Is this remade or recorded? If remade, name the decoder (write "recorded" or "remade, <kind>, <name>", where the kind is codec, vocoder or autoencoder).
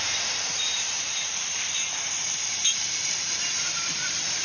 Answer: remade, vocoder, BigVGAN v2